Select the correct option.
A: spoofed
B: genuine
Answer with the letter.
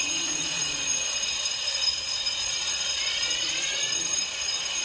A